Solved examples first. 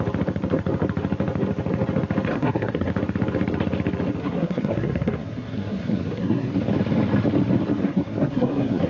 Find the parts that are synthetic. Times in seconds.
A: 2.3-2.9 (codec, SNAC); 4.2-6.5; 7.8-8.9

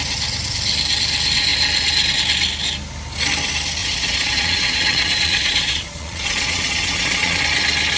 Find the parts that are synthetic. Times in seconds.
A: 3.8-7.4 (vocoder, Vocos)